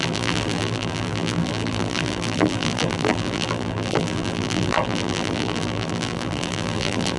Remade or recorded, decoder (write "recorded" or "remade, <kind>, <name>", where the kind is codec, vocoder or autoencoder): remade, vocoder, BigVGAN v2